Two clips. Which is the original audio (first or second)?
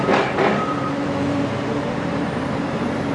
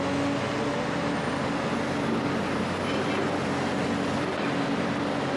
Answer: second